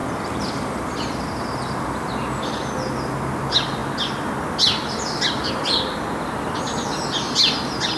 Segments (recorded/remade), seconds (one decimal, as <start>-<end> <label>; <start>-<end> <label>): 0.0-8.0 recorded